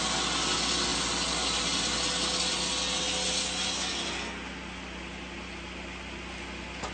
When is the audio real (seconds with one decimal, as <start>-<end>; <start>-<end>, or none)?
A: 0.0-6.9